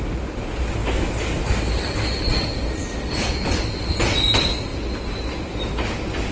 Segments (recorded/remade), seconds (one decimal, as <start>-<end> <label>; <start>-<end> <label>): 0.0-6.3 recorded